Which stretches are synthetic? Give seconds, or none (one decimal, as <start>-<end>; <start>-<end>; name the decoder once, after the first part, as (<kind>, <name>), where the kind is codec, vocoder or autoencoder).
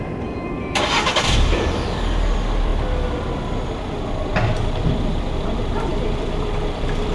0.0-2.7 (vocoder, BigVGAN v2); 4.1-7.1